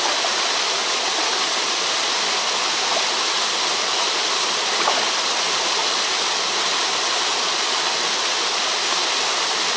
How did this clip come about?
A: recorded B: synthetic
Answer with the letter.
A